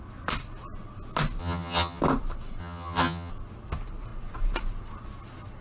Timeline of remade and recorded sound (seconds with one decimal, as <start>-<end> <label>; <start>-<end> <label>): 0.0-1.4 recorded; 1.4-2.0 remade; 2.0-2.6 recorded; 2.6-3.3 remade; 3.3-5.6 recorded